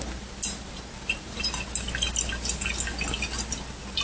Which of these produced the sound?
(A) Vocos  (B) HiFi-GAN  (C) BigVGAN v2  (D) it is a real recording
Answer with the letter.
D